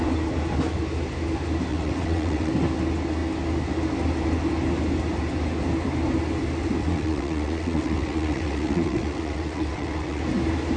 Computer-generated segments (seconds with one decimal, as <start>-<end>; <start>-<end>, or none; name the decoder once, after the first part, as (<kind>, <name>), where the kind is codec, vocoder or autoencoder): 1.7-2.5 (vocoder, WaveNeXt); 6.8-10.2

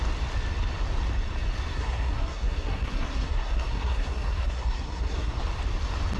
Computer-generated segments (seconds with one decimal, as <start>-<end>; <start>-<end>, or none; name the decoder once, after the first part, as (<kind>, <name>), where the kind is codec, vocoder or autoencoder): 1.7-5.4 (codec, SNAC)

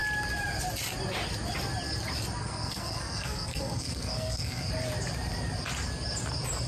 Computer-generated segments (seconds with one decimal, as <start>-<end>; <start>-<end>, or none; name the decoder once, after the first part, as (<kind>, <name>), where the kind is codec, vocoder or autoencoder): 2.4-4.7 (codec, SNAC)

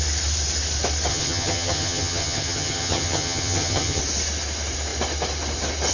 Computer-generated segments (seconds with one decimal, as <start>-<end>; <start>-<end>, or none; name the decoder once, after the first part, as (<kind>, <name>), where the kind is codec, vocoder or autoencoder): 1.1-4.0 (vocoder, HiFi-GAN)

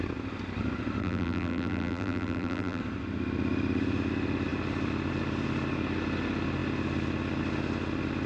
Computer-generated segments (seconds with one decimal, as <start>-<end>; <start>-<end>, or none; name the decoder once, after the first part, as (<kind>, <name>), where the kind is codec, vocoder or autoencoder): 1.0-2.8 (vocoder, BigVGAN v2)